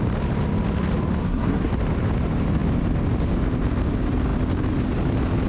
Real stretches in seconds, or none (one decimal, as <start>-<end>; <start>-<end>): 0.0-1.2; 1.7-5.5